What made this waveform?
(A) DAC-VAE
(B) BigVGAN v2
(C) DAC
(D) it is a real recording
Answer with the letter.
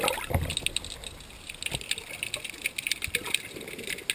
D